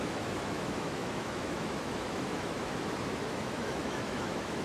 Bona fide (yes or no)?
no